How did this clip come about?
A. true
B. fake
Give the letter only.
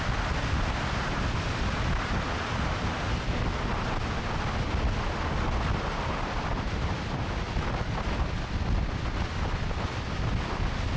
A